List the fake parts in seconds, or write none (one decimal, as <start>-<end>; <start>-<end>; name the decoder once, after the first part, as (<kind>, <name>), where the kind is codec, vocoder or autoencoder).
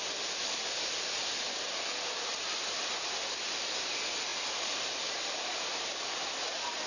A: none